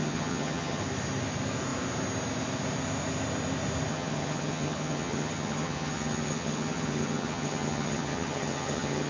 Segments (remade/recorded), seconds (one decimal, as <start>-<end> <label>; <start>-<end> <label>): 0.0-0.8 remade; 0.8-3.9 recorded; 3.9-9.1 remade